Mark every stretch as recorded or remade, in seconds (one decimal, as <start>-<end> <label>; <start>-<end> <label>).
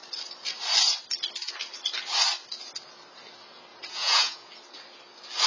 0.0-3.7 recorded; 3.7-4.5 remade; 4.5-5.5 recorded